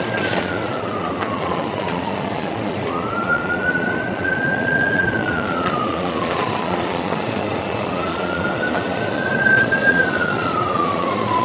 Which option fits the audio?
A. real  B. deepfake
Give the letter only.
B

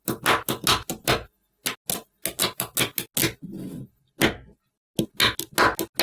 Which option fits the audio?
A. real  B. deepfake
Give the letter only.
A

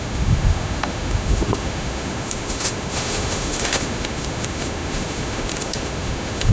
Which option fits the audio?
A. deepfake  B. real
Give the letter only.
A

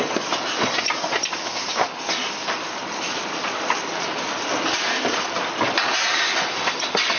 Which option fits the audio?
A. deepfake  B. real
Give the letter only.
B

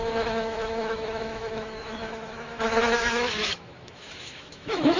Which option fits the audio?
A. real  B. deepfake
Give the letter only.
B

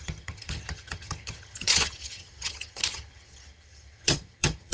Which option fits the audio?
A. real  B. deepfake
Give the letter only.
B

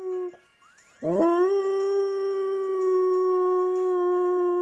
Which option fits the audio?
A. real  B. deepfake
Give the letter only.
A